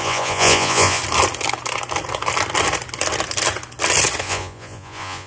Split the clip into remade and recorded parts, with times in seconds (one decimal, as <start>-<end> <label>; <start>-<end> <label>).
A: 0.0-1.0 remade; 1.0-4.2 recorded; 4.2-5.3 remade